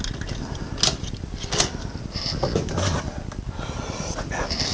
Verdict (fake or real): real